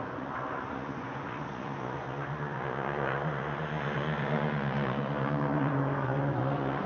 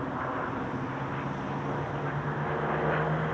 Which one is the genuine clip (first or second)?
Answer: second